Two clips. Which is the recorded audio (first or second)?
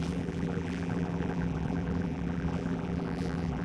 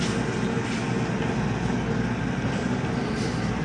second